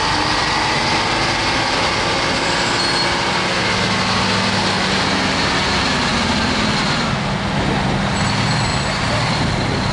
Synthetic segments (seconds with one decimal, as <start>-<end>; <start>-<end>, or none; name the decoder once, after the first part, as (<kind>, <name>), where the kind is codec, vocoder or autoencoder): 8.7-9.5 (vocoder, BigVGAN v2)